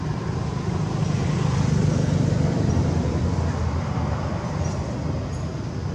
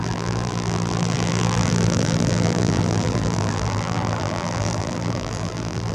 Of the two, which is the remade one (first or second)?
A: second